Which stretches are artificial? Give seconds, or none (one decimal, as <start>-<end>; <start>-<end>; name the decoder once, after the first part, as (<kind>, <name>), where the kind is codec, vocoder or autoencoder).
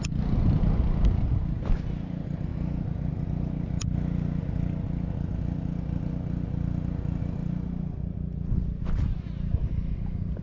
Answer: none